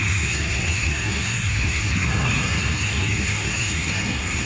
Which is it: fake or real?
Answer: fake